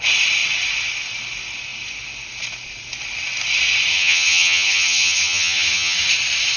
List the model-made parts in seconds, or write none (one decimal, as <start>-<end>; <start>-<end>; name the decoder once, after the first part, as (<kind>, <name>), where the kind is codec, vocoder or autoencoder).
3.9-6.1 (vocoder, HiFi-GAN)